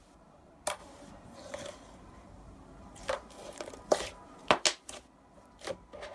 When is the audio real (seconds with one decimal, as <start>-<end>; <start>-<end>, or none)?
0.0-0.8; 4.5-6.1